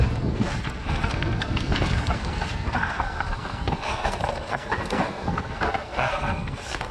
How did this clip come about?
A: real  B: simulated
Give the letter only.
B